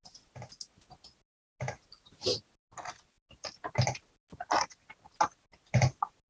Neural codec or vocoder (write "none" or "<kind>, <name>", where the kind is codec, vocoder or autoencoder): none